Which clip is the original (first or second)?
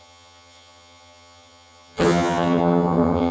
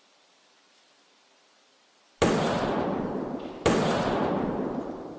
second